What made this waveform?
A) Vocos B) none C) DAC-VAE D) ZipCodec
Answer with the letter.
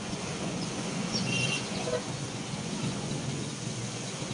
A